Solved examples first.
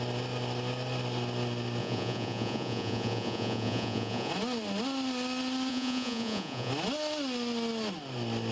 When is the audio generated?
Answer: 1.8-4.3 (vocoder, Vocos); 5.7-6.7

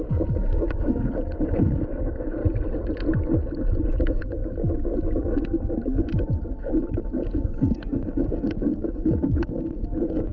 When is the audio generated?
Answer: 0.0-2.4 (codec, DAC); 4.0-4.4; 6.2-6.7; 7.9-10.3

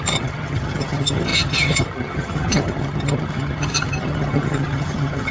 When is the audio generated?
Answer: 0.0-5.3 (vocoder, HiFi-GAN)

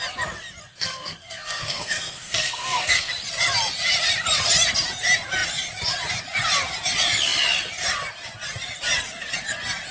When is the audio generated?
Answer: 0.7-3.1 (codec, SNAC)